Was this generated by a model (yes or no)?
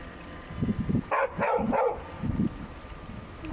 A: yes